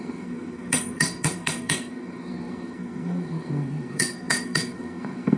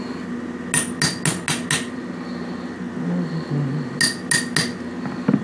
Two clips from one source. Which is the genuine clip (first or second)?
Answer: second